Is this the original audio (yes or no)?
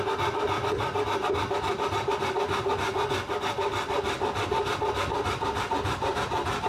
yes